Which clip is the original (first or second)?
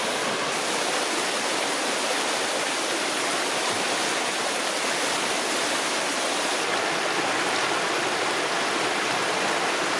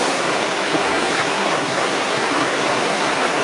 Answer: first